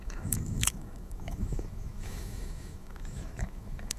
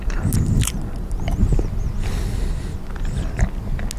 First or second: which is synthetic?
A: first